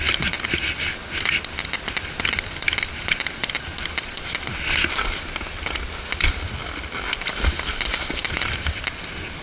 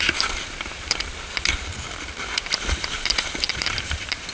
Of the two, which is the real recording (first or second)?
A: first